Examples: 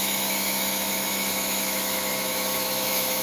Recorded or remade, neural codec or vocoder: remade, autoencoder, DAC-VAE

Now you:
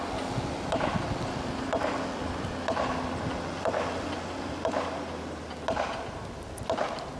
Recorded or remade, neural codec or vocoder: recorded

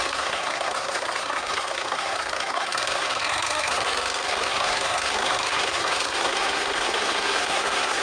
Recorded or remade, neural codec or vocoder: remade, codec, SNAC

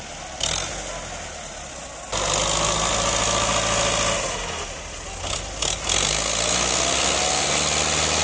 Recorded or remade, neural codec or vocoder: recorded